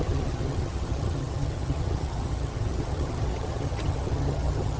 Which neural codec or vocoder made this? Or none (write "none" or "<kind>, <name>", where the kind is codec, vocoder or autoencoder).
vocoder, HiFi-GAN